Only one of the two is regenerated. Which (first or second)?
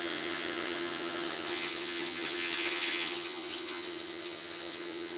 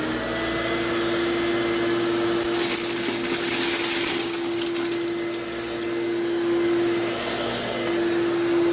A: first